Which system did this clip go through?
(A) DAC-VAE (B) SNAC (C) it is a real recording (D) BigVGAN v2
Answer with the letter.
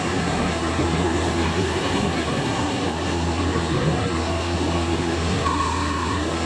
B